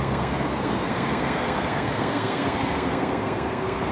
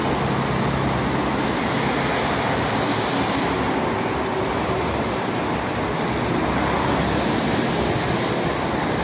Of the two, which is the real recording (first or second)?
second